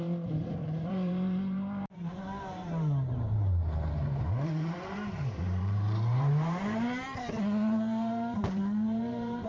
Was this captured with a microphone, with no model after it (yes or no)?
no